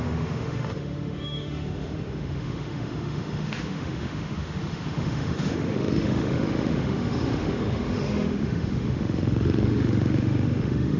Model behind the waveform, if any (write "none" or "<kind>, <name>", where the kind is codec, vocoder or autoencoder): autoencoder, DAC-VAE